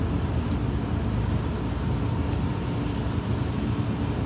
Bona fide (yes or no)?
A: yes